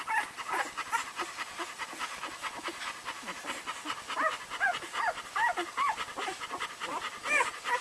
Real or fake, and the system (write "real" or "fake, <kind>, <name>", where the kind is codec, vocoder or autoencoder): real